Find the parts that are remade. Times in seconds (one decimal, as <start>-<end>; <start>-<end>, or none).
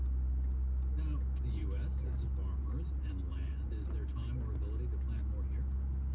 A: none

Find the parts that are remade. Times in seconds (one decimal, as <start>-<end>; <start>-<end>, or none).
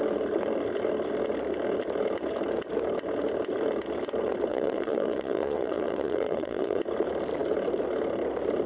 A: 4.5-6.8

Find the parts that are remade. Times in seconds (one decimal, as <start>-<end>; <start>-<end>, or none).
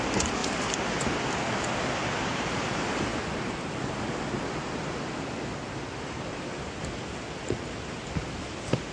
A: none